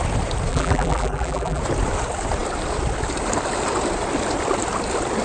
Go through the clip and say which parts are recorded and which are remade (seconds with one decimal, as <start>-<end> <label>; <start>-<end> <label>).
0.0-0.5 recorded; 0.5-1.6 remade; 1.6-5.2 recorded